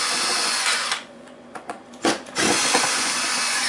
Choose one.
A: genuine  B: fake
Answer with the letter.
B